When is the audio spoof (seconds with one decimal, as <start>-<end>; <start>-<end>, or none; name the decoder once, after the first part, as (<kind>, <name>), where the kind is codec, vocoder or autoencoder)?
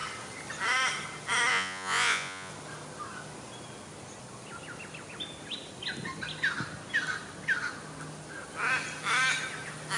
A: 1.5-2.5 (vocoder, Vocos)